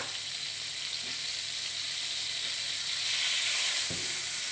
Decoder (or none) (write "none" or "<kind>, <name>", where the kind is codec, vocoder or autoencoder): none